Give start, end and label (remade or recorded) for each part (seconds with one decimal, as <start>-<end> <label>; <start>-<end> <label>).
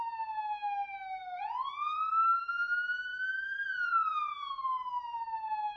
0.0-5.8 recorded